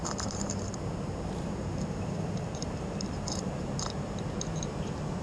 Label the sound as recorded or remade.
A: remade